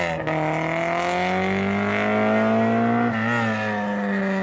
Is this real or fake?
real